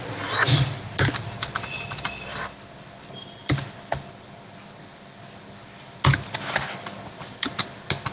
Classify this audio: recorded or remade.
recorded